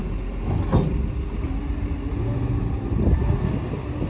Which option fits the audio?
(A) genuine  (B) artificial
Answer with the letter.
A